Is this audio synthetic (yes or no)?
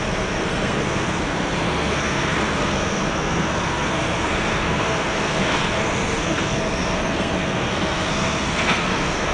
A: yes